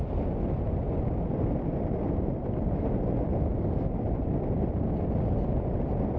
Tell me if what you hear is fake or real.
real